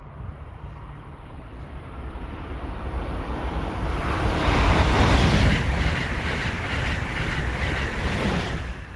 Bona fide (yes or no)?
no